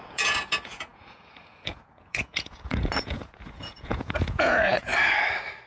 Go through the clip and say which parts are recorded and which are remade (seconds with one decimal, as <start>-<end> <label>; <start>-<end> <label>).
0.0-4.9 remade; 4.9-5.7 recorded